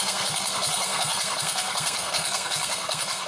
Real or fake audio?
fake